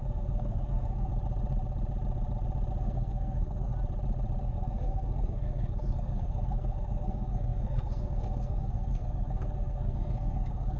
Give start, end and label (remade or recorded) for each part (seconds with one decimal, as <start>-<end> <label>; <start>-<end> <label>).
0.0-1.1 remade; 1.1-2.8 recorded; 2.8-3.7 remade; 3.7-4.4 recorded; 4.4-10.8 remade